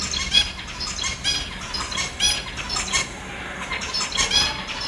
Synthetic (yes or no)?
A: no